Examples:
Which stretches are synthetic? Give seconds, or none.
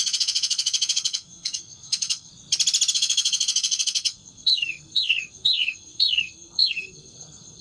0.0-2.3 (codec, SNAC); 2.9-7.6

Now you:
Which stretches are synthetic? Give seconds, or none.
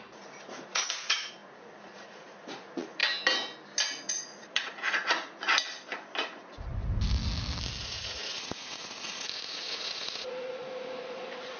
0.0-3.0 (vocoder, Vocos); 3.9-5.5; 6.2-6.7; 7.8-11.6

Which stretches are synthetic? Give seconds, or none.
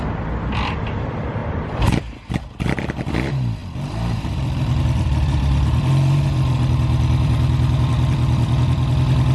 0.0-9.3 (vocoder, BigVGAN v2)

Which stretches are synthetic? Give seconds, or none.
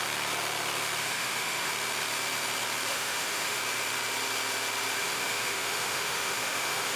1.0-1.7 (autoencoder, DAC-VAE); 2.9-3.6; 5.0-7.0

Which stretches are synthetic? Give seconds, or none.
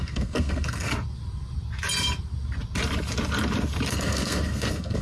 0.0-0.9 (codec, SNAC); 3.9-5.0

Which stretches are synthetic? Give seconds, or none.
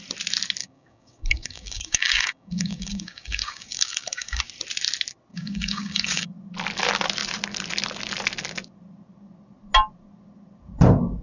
0.6-4.4 (codec, DAC); 5.3-6.3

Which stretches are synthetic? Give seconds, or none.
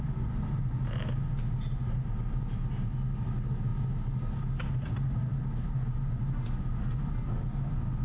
none